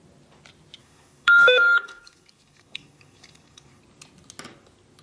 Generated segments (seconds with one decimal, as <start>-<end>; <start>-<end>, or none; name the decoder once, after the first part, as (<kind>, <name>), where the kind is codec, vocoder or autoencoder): 0.8-3.8 (codec, DAC)